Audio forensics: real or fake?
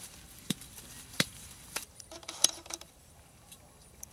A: fake